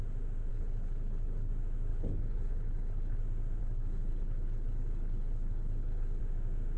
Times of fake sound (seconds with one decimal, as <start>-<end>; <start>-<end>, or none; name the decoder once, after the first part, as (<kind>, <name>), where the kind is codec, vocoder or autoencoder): 0.5-1.5 (codec, HILCodec); 1.9-3.2; 3.6-6.2